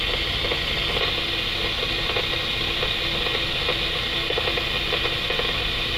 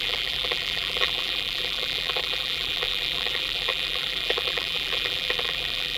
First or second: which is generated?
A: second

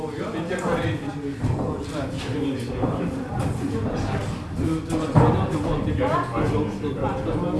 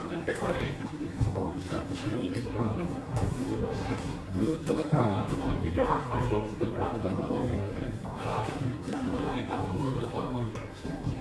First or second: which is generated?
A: second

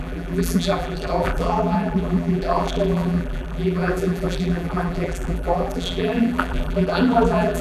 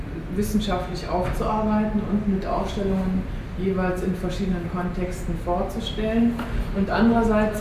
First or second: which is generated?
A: first